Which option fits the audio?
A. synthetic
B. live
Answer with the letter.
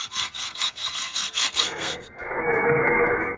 A